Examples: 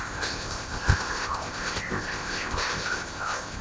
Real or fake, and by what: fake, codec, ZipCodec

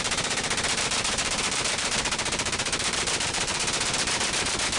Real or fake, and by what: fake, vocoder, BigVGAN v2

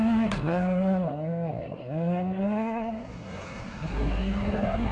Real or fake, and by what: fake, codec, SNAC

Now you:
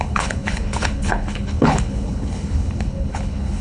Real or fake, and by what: fake, codec, HILCodec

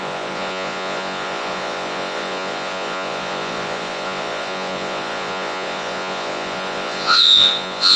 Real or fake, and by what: fake, vocoder, Vocos